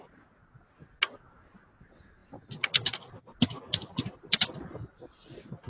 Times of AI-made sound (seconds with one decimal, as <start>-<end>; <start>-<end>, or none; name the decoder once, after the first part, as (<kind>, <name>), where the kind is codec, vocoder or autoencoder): none